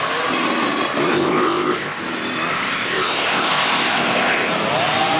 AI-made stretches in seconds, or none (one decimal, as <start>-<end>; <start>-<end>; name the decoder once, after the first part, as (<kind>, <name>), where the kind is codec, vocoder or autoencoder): 1.1-2.0 (codec, ZipCodec); 2.5-4.5